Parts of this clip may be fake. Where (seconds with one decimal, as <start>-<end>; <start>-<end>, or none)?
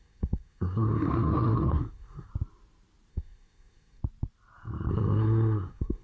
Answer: 0.0-2.3; 3.1-4.0; 4.9-6.0